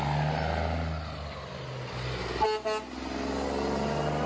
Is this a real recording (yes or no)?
yes